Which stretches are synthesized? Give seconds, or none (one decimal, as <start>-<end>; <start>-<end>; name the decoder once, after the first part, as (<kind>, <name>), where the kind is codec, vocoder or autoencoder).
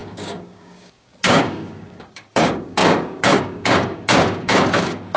0.0-5.2 (codec, DAC)